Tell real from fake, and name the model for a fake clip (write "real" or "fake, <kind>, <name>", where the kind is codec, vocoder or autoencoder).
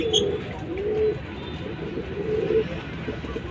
real